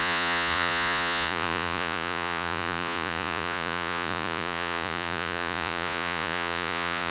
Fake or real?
fake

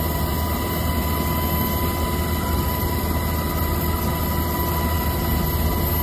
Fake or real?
real